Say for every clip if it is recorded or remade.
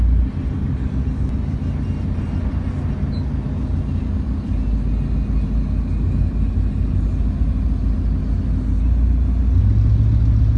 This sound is recorded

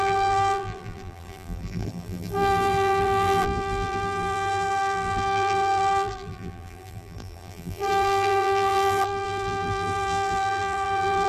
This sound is remade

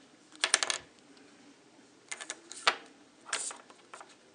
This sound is recorded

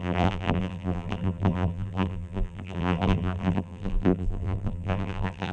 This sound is remade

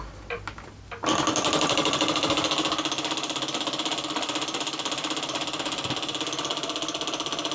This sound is recorded